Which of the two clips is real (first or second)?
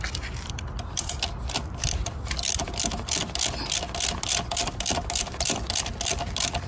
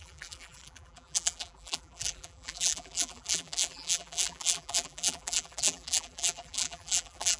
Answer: first